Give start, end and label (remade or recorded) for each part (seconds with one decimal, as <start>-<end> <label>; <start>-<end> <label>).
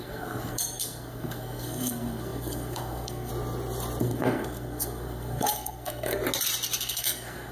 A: 0.0-3.3 remade; 3.3-4.0 recorded; 4.0-6.2 remade; 6.2-6.8 recorded; 6.8-7.5 remade